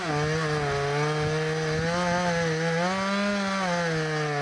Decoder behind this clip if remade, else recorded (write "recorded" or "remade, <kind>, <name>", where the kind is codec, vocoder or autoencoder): recorded